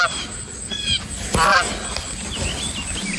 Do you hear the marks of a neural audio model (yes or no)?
no